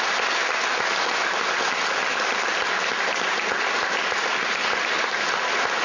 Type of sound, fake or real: real